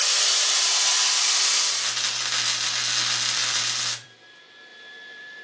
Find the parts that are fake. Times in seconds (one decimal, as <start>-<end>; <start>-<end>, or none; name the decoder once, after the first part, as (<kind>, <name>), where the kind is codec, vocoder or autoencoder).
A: 0.9-1.6 (vocoder, BigVGAN v2); 3.4-4.3; 4.7-5.4